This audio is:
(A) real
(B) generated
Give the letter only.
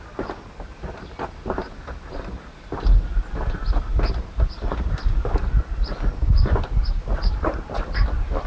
A